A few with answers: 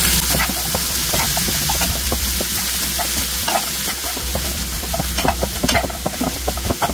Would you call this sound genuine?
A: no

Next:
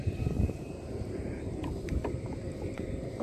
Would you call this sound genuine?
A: no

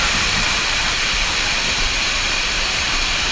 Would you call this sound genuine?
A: no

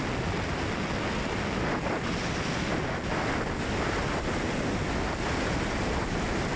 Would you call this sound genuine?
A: yes